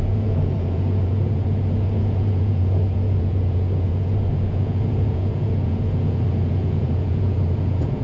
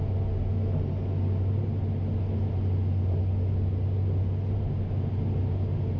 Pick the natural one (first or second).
second